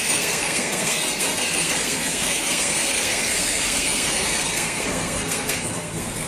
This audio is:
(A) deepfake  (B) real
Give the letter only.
A